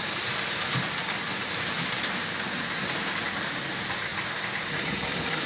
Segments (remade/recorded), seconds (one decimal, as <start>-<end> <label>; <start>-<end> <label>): 0.0-4.1 remade; 4.1-4.8 recorded; 4.8-5.5 remade